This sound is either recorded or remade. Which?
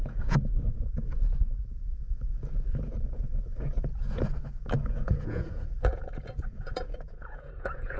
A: remade